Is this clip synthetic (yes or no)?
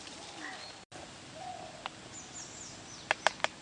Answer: no